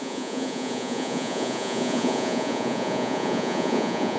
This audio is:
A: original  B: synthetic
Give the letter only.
B